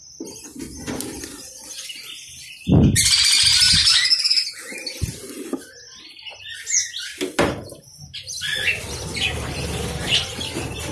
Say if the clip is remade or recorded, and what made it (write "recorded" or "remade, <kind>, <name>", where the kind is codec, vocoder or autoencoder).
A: recorded